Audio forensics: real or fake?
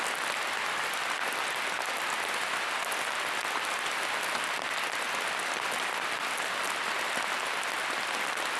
real